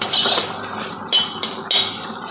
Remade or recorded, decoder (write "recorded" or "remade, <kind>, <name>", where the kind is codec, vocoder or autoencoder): recorded